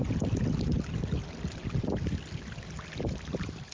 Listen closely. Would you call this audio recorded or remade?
recorded